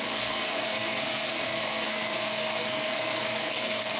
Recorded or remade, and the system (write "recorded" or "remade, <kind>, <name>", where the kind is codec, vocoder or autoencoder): remade, codec, SNAC